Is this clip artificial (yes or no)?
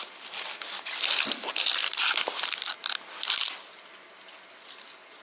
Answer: no